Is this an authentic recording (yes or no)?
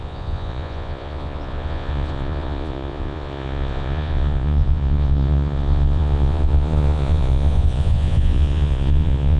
no